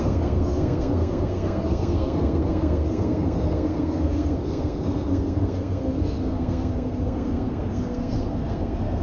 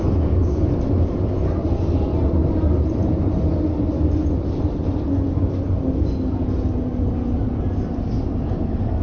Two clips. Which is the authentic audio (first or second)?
second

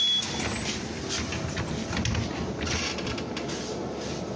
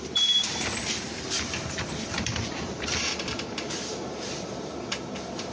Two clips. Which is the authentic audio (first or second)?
first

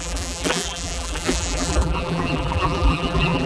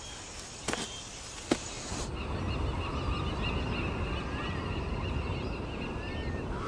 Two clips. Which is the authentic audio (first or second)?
second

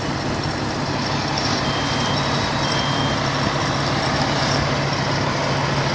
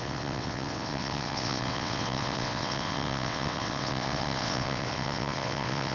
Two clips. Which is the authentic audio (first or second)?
first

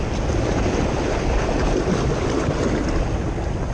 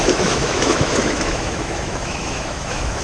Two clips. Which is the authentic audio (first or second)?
first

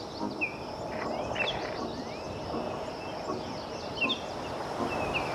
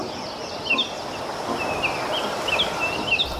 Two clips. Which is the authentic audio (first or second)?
first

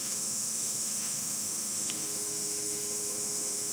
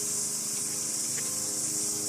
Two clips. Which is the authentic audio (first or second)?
second